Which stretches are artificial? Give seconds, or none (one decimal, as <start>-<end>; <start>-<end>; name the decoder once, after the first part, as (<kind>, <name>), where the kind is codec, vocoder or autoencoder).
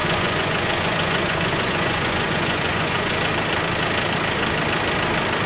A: 0.0-3.3 (vocoder, Vocos)